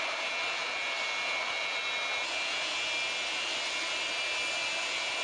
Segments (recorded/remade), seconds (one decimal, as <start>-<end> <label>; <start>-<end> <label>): 0.0-5.2 recorded